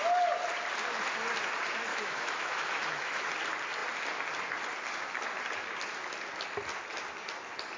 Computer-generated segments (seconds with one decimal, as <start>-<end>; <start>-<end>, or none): 1.9-3.3